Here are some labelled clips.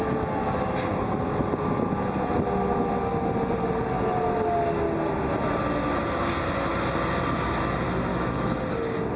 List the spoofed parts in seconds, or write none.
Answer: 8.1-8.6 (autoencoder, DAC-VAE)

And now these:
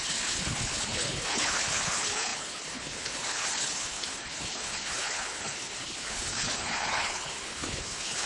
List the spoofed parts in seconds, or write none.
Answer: 0.0-8.3 (codec, HILCodec)

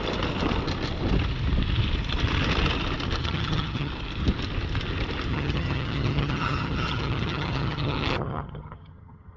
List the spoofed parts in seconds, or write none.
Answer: 3.2-3.9 (vocoder, HiFi-GAN); 5.3-9.4

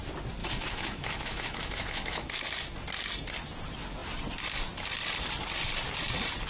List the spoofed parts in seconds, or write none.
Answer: 0.4-2.3 (autoencoder, DAC-VAE)

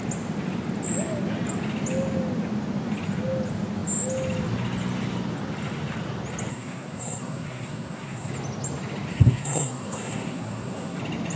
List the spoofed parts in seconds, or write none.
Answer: 6.5-8.3 (codec, SNAC); 9.1-11.0